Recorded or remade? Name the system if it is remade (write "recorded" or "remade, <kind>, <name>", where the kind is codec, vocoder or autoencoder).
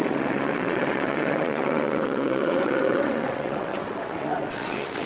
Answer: remade, vocoder, WaveNeXt